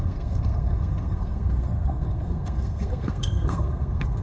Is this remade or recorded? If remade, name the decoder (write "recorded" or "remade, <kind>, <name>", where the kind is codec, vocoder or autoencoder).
remade, codec, SNAC